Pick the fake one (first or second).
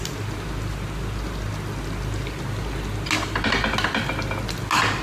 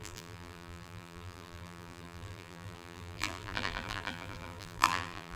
second